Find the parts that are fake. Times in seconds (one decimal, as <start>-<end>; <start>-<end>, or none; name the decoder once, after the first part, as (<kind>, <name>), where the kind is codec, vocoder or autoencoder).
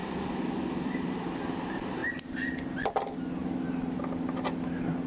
none